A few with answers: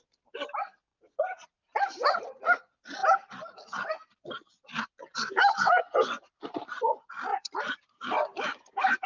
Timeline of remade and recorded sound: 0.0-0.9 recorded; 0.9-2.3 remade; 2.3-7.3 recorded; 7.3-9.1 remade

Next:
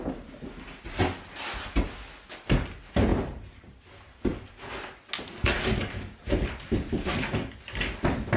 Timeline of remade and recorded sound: 0.0-3.1 recorded; 3.1-3.7 remade; 3.7-5.8 recorded; 5.8-7.1 remade; 7.1-8.4 recorded

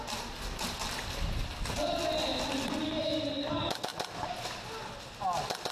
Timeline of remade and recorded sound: 0.0-5.7 recorded

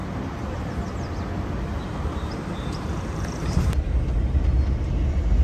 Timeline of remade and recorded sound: 0.0-0.6 remade; 0.6-1.7 recorded; 1.7-4.9 remade; 4.9-5.4 recorded

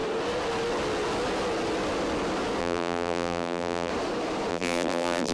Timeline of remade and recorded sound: 0.0-2.6 recorded; 2.6-3.9 remade; 3.9-4.5 recorded; 4.5-5.3 remade